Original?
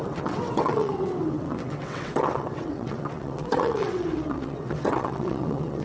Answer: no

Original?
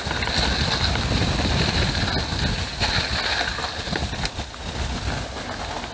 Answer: yes